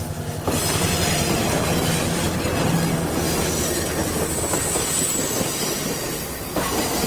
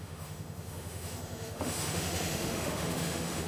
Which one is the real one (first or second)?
first